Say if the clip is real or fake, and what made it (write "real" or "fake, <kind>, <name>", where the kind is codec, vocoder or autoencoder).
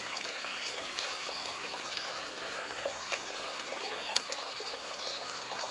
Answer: fake, codec, SNAC